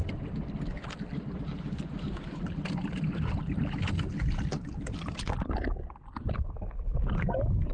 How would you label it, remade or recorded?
recorded